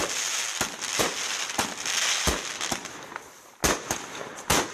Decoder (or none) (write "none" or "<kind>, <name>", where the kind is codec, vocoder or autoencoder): none